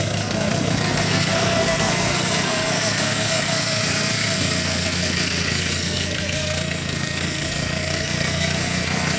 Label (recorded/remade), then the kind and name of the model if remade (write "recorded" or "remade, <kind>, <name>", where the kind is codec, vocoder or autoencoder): remade, codec, SNAC